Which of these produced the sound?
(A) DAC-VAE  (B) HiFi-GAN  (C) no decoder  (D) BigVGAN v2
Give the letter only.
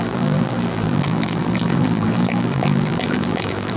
D